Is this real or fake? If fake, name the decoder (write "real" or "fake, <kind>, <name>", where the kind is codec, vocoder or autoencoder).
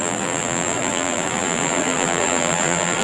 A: fake, vocoder, BigVGAN v2